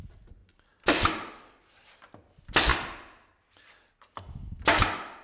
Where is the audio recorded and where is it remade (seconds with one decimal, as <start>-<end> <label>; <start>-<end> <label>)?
0.0-5.2 recorded